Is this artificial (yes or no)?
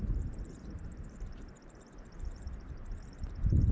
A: yes